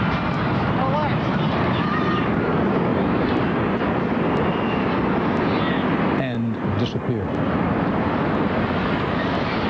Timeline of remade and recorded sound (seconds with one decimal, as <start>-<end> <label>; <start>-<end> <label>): 0.0-9.7 recorded